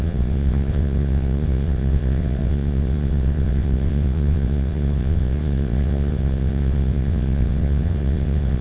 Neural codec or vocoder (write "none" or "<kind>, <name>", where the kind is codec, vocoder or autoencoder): vocoder, WaveNeXt